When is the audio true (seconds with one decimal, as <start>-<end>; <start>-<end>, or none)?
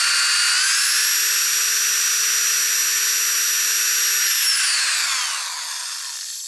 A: 0.0-6.5